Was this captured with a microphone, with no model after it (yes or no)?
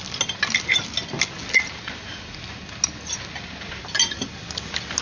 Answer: yes